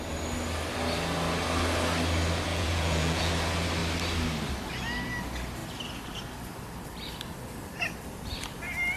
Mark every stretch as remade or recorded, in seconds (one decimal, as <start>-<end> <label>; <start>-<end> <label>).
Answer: 0.0-2.5 recorded; 2.5-3.3 remade; 3.3-9.0 recorded